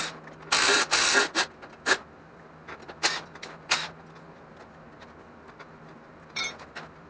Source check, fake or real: real